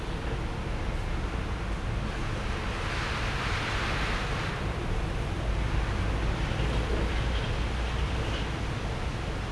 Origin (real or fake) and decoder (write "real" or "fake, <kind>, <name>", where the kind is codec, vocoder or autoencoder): real